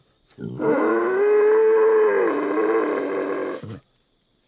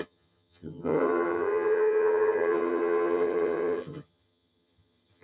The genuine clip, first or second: first